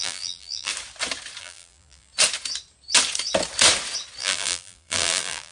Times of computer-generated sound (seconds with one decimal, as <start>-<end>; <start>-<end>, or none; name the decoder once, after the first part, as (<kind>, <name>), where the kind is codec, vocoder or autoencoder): 0.0-0.7 (vocoder, BigVGAN v2); 1.4-2.1; 4.2-5.5